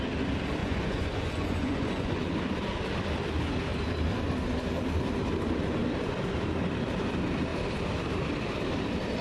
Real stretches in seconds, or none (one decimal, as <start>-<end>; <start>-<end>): 0.0-0.6; 2.3-9.2